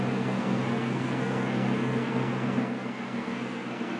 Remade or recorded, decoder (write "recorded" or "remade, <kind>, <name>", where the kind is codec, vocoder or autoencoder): remade, codec, SNAC